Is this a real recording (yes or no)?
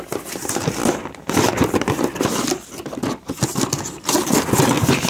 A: yes